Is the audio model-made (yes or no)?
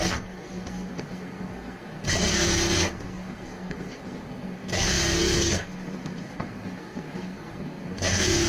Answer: yes